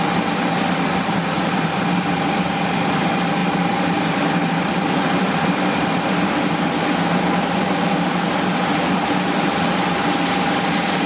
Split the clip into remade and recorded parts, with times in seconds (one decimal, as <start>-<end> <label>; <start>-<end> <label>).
0.0-11.1 recorded